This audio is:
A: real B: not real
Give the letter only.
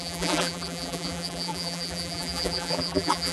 B